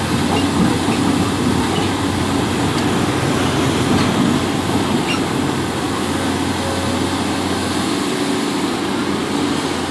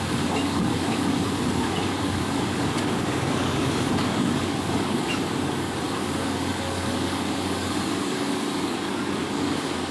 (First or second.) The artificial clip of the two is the second